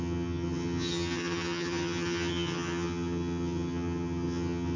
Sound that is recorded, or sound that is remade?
remade